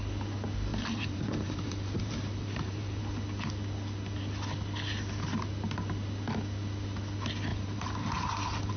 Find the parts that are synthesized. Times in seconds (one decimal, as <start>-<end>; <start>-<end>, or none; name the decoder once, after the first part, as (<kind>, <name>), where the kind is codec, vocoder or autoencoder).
0.7-3.0 (vocoder, BigVGAN v2); 7.5-8.8